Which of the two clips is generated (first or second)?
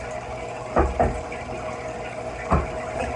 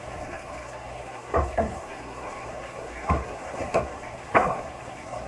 second